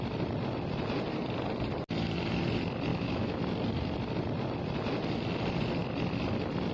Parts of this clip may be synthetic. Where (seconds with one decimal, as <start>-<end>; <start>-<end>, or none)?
2.9-3.4